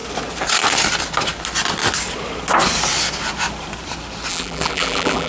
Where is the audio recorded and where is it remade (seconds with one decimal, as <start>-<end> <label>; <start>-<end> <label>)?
0.0-4.3 recorded; 4.3-5.3 remade

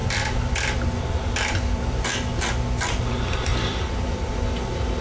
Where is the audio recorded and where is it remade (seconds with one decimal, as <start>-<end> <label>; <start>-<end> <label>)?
0.0-0.5 remade; 0.5-3.5 recorded; 3.5-4.3 remade; 4.3-5.0 recorded

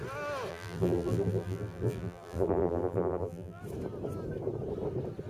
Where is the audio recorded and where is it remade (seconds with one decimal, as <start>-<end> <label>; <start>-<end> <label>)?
0.0-0.5 recorded; 0.5-3.6 remade; 3.6-5.3 recorded

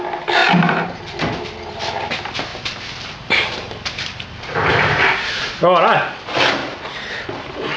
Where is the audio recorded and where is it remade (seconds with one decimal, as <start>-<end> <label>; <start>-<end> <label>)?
0.0-0.4 recorded; 0.4-1.0 remade; 1.0-2.5 recorded; 2.5-5.6 remade; 5.6-6.6 recorded; 6.6-7.1 remade; 7.1-7.8 recorded

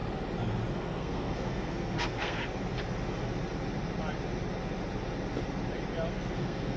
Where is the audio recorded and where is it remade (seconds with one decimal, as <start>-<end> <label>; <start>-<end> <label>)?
0.0-0.7 recorded; 0.7-2.4 remade; 2.4-6.1 recorded; 6.1-6.8 remade

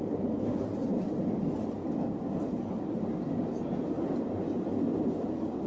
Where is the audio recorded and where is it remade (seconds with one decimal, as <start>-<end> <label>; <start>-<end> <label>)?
0.0-5.7 recorded

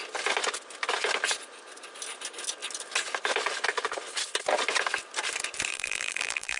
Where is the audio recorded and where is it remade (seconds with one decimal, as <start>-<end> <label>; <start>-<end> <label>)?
0.0-5.7 recorded; 5.7-6.6 remade

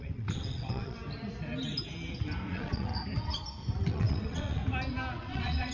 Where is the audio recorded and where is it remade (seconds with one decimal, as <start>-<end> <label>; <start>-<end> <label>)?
0.0-1.0 remade; 1.0-2.5 recorded; 2.5-2.9 remade; 2.9-3.9 recorded; 3.9-4.6 remade; 4.6-5.2 recorded; 5.2-5.7 remade